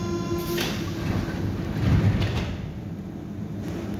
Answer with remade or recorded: recorded